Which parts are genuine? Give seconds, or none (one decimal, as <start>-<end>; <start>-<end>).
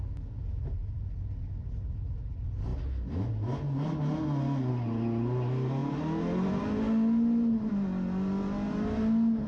0.0-9.5